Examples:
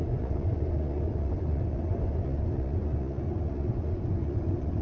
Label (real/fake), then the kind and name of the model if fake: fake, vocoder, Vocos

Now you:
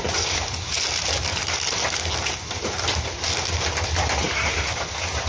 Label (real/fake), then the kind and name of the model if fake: real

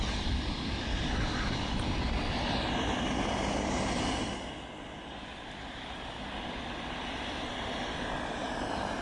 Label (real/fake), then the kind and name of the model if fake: real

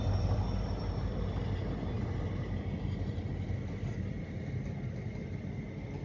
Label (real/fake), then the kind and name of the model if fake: real